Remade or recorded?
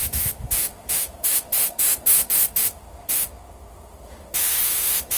remade